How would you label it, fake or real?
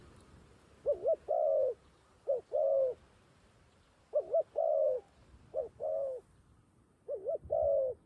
real